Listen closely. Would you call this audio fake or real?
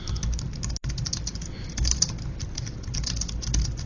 real